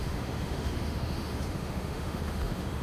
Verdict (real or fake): fake